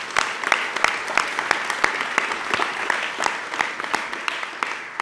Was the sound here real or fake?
real